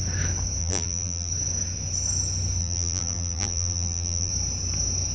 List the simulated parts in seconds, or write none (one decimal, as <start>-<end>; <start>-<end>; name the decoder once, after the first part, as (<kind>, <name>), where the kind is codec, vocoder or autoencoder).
0.6-1.3 (vocoder, BigVGAN v2); 2.6-4.3

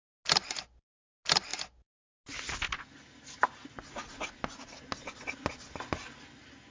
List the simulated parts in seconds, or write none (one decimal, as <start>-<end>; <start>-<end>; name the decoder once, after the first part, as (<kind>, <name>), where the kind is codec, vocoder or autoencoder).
none

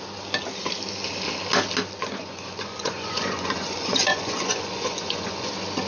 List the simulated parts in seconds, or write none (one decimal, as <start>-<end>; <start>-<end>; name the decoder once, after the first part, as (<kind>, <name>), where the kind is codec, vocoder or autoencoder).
2.0-5.5 (vocoder, Vocos)

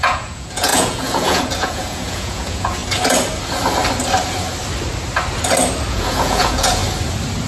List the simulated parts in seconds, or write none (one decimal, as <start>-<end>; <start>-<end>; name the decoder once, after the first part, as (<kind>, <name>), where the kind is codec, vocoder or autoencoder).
0.0-2.8 (vocoder, Vocos); 5.9-6.8

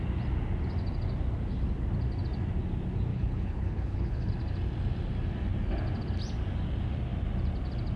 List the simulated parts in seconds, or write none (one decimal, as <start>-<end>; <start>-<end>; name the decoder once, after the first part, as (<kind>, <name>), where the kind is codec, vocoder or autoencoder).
3.1-4.3 (codec, HILCodec)

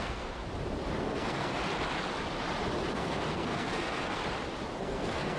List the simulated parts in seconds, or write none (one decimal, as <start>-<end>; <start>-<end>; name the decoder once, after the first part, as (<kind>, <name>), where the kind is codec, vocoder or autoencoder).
0.0-0.4 (codec, SNAC); 1.0-1.6; 2.9-4.2; 4.8-5.4

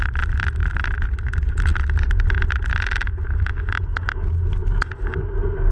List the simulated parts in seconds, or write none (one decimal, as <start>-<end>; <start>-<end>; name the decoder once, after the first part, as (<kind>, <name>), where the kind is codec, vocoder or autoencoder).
none

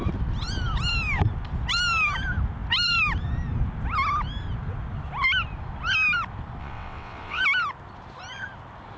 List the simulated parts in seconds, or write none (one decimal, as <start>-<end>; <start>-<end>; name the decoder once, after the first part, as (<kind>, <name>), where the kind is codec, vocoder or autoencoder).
6.6-7.4 (vocoder, WaveNeXt)